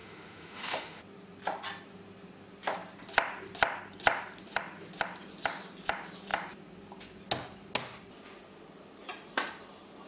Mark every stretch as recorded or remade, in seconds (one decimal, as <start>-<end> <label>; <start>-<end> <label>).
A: 0.0-1.0 remade; 1.0-10.1 recorded

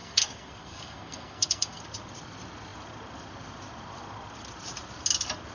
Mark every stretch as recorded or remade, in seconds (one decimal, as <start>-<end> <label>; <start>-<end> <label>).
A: 0.0-1.8 remade; 1.8-5.5 recorded

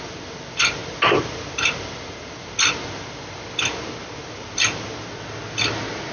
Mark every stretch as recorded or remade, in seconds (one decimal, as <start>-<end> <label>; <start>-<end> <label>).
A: 0.0-6.1 recorded

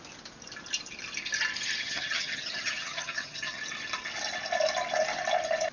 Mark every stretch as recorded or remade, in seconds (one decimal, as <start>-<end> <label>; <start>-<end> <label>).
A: 0.0-1.8 recorded; 1.8-3.6 remade; 3.6-5.7 recorded

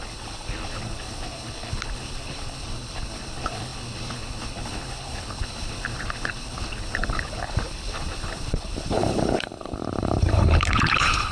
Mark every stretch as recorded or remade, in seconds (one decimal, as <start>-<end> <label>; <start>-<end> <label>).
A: 0.0-11.3 remade

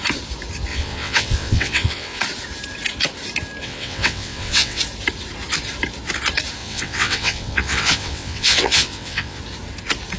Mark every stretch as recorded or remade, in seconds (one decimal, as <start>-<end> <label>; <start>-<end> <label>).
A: 0.0-0.7 recorded; 0.7-2.2 remade; 2.2-3.6 recorded; 3.6-4.8 remade; 4.8-6.6 recorded; 6.6-9.4 remade; 9.4-10.2 recorded